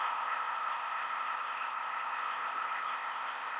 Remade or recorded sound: remade